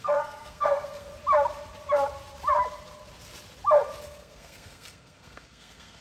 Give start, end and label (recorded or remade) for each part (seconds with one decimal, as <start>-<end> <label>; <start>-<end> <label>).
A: 0.0-1.1 remade; 1.1-4.0 recorded; 4.0-6.0 remade